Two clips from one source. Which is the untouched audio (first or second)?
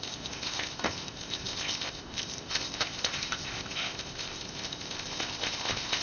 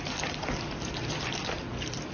second